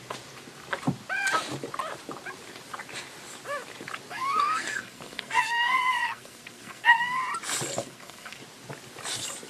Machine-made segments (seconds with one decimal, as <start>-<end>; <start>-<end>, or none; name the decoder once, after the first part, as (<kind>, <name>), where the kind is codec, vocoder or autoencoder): 4.1-7.2 (codec, SNAC); 7.8-8.4